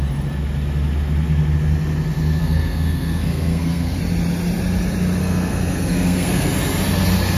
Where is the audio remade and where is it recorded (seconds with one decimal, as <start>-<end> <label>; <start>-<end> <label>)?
0.0-2.4 recorded; 2.4-4.0 remade; 4.0-5.2 recorded; 5.2-6.5 remade; 6.5-7.4 recorded